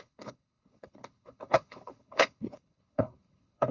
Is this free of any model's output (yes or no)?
no